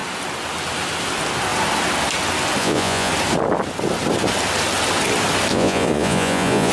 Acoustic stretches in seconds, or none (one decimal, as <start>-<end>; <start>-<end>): 0.0-2.6; 3.1-5.5